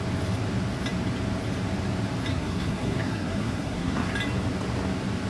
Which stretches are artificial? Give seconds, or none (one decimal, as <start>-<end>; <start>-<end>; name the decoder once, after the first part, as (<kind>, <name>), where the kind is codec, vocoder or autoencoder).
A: 2.3-4.1 (codec, SNAC)